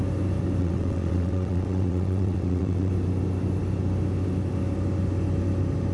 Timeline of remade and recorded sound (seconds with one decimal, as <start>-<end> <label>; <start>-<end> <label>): 0.0-0.6 recorded; 0.6-2.9 remade; 2.9-5.9 recorded